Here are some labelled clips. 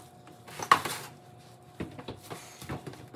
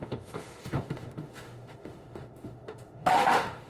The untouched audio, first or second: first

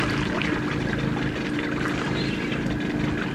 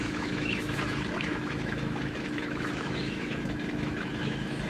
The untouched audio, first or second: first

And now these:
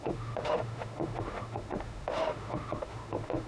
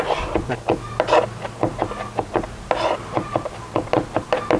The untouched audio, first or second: second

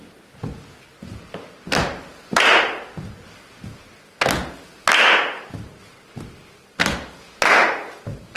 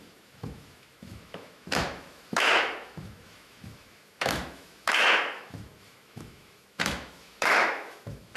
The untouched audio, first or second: first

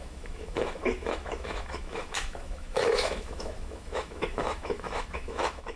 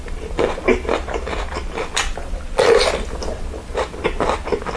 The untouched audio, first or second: second